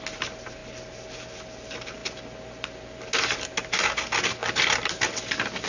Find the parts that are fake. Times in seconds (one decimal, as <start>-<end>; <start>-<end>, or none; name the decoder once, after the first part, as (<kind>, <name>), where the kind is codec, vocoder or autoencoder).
none